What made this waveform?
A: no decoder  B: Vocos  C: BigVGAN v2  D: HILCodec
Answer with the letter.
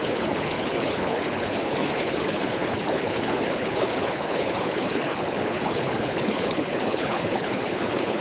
D